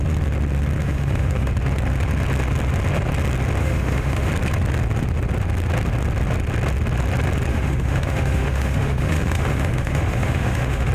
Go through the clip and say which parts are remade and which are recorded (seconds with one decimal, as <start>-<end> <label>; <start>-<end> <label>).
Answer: 0.0-0.8 recorded; 0.8-1.5 remade; 1.5-3.6 recorded; 3.6-4.3 remade; 4.3-7.5 recorded; 7.5-10.9 remade